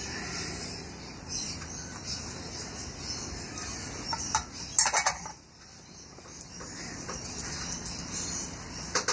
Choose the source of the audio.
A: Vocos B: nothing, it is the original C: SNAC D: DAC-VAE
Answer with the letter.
B